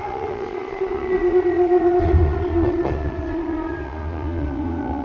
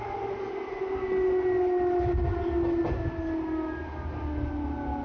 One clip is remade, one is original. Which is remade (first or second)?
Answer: first